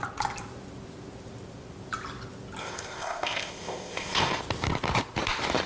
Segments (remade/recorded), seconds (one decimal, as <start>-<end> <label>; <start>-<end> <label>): 0.0-2.6 recorded; 2.6-4.4 remade; 4.4-5.7 recorded